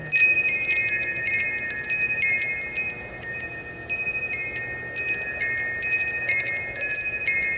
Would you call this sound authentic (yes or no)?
yes